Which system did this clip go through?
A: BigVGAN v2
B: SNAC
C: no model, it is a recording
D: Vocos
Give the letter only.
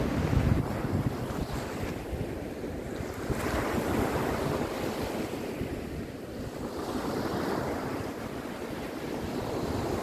C